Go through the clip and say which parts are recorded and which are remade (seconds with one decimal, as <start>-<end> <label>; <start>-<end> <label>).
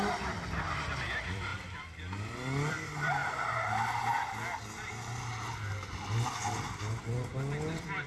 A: 0.0-1.5 remade; 1.5-2.7 recorded; 2.7-3.2 remade; 3.2-7.0 recorded; 7.0-8.1 remade